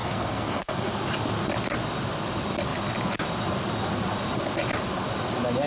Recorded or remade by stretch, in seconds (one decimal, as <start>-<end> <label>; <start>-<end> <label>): 0.0-0.9 remade; 0.9-5.7 recorded